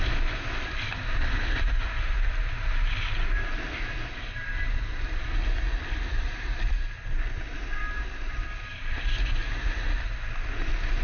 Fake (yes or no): no